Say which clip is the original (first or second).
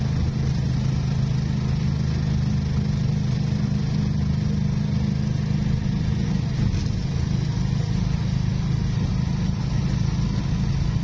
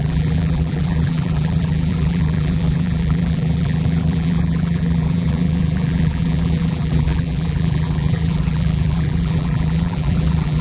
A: first